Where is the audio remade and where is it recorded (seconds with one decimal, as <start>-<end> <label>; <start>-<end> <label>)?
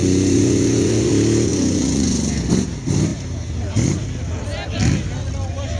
0.0-1.1 remade; 1.1-1.5 recorded; 1.5-2.4 remade; 2.4-5.8 recorded